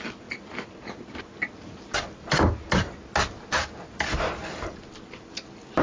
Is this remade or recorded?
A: recorded